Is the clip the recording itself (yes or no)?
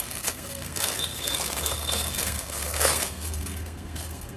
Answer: no